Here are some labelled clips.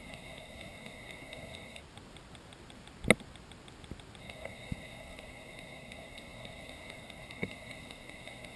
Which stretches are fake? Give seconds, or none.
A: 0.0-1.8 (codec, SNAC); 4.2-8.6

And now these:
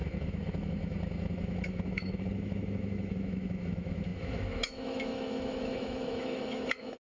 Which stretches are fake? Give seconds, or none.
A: 0.0-7.1 (autoencoder, DAC-VAE)

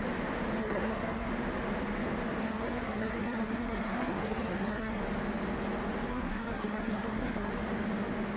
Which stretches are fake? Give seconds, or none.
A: 0.6-1.3 (codec, SNAC); 2.4-5.0; 6.1-7.5